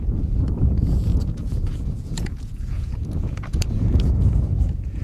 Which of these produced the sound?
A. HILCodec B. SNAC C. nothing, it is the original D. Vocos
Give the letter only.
D